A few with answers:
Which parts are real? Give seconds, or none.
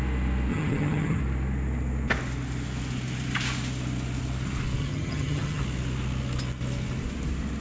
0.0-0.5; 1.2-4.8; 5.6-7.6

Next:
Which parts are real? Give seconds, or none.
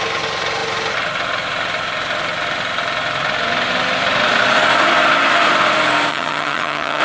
0.0-6.1